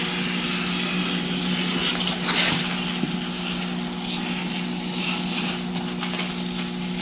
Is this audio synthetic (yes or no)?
no